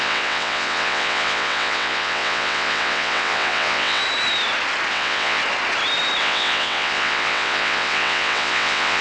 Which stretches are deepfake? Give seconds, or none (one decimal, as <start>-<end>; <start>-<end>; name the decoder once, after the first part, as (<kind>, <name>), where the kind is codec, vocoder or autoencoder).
0.0-4.0 (vocoder, WaveNeXt); 4.9-5.4; 6.2-9.0